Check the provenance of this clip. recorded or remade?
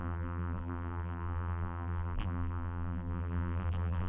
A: remade